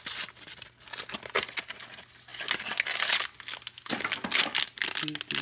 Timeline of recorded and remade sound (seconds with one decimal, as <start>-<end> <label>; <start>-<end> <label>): 0.0-5.4 recorded

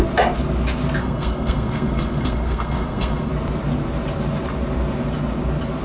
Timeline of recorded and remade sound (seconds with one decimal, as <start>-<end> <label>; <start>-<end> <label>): 0.0-1.0 recorded; 1.0-3.3 remade; 3.3-5.8 recorded